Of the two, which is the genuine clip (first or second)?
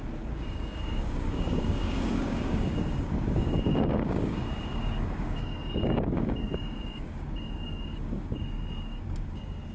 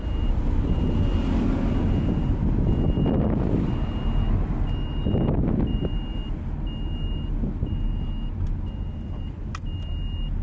second